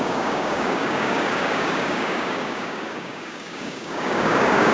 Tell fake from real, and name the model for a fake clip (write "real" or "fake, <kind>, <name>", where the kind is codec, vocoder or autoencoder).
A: fake, codec, DAC